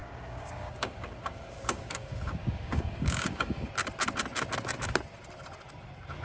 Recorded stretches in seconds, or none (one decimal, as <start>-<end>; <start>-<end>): 3.7-6.2